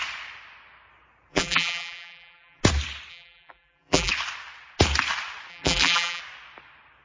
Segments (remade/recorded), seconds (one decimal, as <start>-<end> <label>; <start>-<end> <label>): 0.0-1.3 recorded; 1.3-2.6 remade; 2.6-3.1 recorded; 3.1-4.1 remade; 4.1-5.5 recorded; 5.5-6.2 remade; 6.2-7.0 recorded